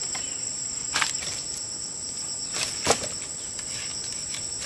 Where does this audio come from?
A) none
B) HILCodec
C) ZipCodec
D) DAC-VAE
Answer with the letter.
A